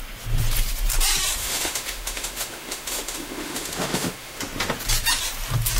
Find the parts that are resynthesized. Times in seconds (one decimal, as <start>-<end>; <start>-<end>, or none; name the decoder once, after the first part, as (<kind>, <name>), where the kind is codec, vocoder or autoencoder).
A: 1.4-4.4 (autoencoder, DAC-VAE)

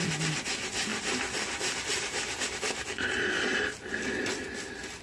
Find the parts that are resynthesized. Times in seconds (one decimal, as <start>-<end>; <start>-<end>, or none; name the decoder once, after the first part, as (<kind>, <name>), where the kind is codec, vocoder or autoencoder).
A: none

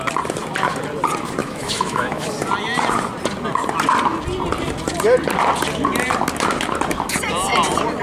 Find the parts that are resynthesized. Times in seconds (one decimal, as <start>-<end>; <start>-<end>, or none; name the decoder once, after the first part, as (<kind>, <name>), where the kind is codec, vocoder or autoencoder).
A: 1.4-2.3 (autoencoder, DAC-VAE)

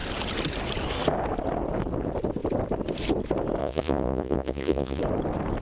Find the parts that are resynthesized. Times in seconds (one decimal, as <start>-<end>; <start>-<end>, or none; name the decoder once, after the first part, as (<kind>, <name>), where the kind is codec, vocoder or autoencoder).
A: 3.6-5.0 (vocoder, Vocos)